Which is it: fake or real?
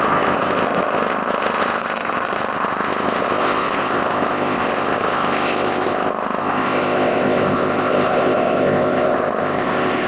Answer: fake